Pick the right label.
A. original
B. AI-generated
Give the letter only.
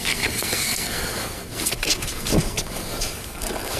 B